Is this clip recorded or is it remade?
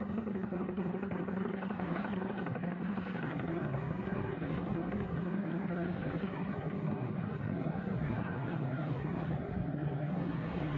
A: remade